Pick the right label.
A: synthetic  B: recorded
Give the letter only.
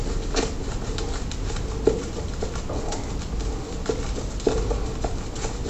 B